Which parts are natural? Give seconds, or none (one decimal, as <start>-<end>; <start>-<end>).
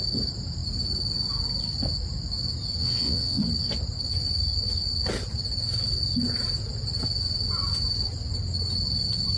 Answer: 0.0-2.8; 3.4-9.4